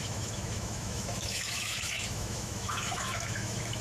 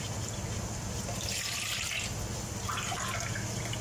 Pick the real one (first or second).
second